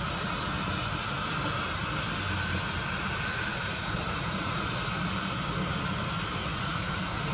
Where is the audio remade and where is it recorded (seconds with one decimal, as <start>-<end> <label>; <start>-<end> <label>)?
0.0-3.5 recorded; 3.5-4.7 remade; 4.7-6.5 recorded; 6.5-7.3 remade